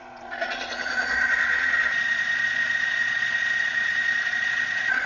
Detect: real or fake fake